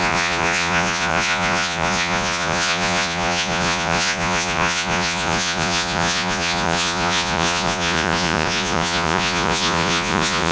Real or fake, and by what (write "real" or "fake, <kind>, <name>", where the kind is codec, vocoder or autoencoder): fake, vocoder, Vocos